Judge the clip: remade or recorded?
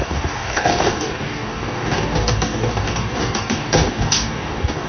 remade